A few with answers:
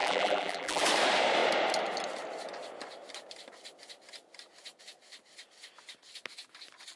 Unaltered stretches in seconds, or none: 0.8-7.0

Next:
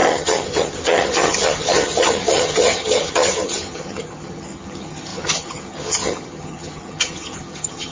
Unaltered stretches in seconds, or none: none

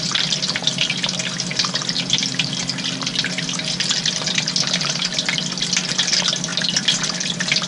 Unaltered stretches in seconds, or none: 0.0-7.7

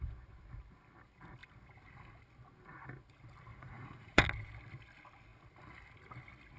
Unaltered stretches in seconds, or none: 0.0-3.5; 4.2-6.6

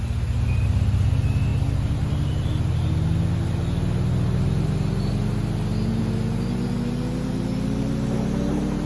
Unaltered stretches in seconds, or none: 0.0-8.9

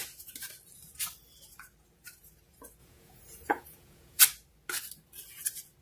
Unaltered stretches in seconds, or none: 0.0-2.8; 4.2-5.8

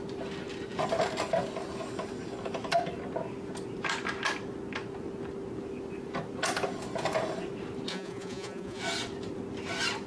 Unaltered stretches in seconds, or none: 0.0-7.9; 8.8-10.1

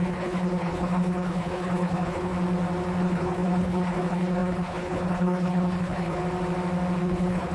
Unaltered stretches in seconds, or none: 2.3-3.0; 6.2-7.0